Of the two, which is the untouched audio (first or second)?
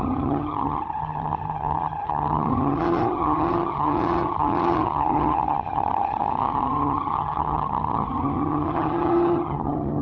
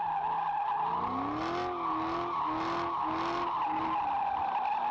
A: second